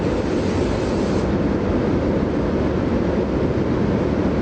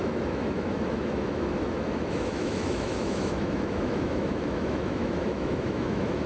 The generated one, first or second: second